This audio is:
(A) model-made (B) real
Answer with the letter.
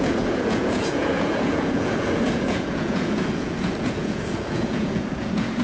A